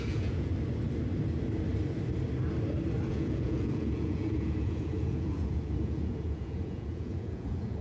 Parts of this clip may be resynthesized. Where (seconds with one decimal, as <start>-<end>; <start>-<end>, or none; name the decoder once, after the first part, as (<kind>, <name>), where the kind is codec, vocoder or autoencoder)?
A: 0.0-0.5 (vocoder, Vocos); 3.1-7.8